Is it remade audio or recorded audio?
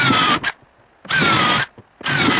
recorded